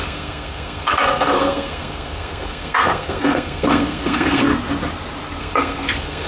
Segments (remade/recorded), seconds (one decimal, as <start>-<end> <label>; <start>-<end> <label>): 0.0-4.5 remade; 4.5-5.4 recorded; 5.4-6.3 remade